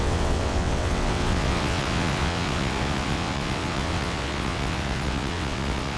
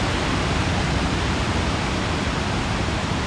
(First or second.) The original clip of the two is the second